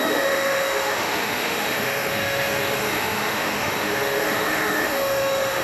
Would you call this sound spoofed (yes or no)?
yes